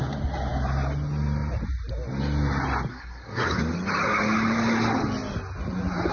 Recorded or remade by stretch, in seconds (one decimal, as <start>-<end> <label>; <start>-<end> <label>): 0.0-2.9 recorded; 2.9-3.6 remade; 3.6-6.1 recorded